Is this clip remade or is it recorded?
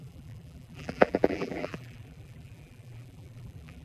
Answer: remade